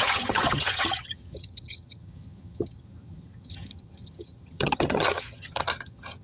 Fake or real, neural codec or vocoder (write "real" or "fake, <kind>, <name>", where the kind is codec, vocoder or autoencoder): fake, vocoder, HiFi-GAN